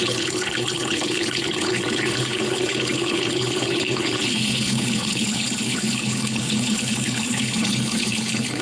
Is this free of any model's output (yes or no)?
no